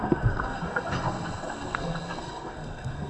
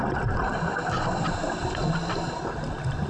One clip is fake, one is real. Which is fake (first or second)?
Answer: first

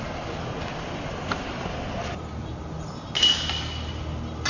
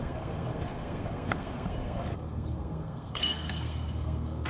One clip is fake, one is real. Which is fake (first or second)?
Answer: second